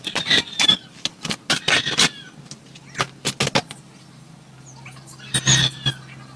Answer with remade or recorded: recorded